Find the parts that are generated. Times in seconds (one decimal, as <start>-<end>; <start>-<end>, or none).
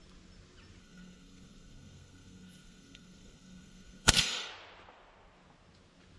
0.8-4.5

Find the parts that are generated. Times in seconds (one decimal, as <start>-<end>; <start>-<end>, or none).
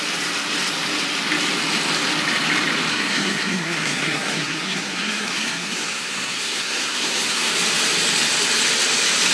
2.9-7.5